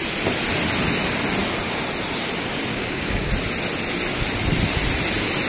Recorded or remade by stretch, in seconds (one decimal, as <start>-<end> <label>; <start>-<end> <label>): 0.0-2.7 recorded; 2.7-3.3 remade; 3.3-5.5 recorded